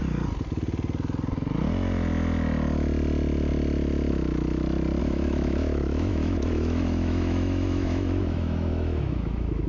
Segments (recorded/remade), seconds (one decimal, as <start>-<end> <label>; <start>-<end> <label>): 0.0-5.0 recorded; 5.0-9.7 remade